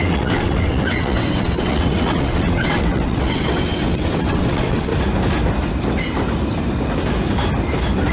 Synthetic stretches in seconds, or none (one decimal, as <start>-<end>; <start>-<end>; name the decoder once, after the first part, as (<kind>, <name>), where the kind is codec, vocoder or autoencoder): 0.0-4.9 (vocoder, WaveNeXt)

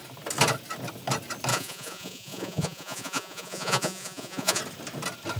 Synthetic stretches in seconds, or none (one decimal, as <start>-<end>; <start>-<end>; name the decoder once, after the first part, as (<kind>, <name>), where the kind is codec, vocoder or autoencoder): 1.5-4.6 (vocoder, Vocos)

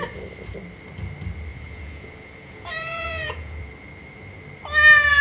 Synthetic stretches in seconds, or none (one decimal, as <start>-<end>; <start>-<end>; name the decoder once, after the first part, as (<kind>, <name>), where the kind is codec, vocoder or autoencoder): 1.5-3.6 (vocoder, Vocos)